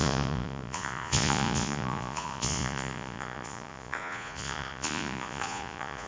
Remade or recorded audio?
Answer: remade